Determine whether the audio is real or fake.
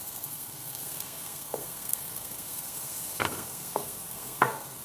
fake